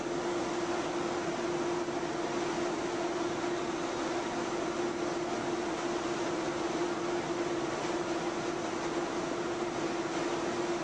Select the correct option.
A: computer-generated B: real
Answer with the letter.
B